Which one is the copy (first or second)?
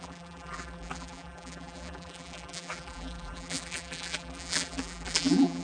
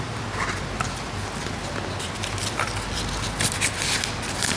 first